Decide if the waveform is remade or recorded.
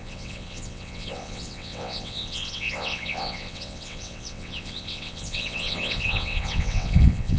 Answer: remade